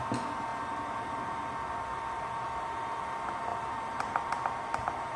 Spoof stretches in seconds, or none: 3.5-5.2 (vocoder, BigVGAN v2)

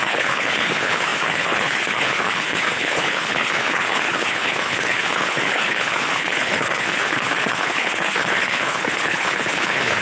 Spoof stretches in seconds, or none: 0.0-10.0 (codec, HILCodec)

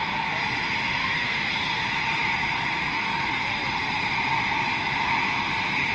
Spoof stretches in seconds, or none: 1.0-1.5 (codec, SNAC)

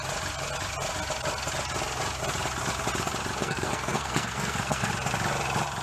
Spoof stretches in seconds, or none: 3.4-4.9 (codec, SNAC)

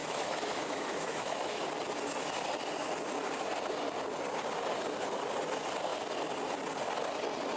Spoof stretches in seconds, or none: 0.0-1.6 (autoencoder, DAC-VAE)

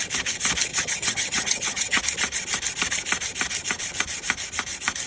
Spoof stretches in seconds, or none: 0.7-2.0 (vocoder, HiFi-GAN)